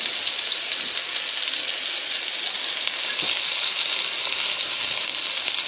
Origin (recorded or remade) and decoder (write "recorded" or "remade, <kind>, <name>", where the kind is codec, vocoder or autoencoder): recorded